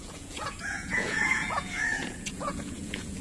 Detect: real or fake fake